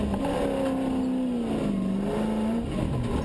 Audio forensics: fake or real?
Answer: real